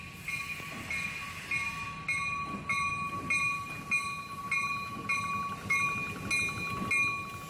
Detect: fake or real real